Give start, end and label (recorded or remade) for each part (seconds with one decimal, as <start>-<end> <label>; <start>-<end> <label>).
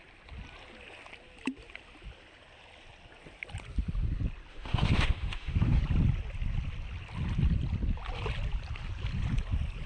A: 0.0-4.5 recorded; 4.5-5.8 remade; 5.8-9.9 recorded